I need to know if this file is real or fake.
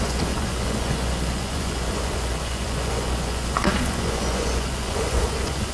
fake